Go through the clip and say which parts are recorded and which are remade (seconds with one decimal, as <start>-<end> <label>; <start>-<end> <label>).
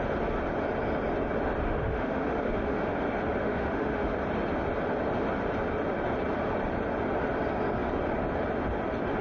0.0-1.6 recorded; 1.6-2.9 remade; 2.9-3.4 recorded; 3.4-4.1 remade; 4.1-9.2 recorded